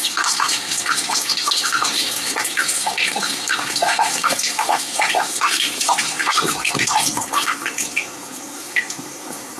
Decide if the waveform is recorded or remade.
remade